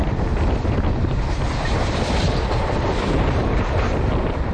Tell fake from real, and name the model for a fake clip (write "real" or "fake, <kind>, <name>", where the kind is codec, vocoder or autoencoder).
fake, vocoder, BigVGAN v2